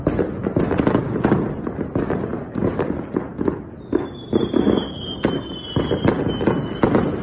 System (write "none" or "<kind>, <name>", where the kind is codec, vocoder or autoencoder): none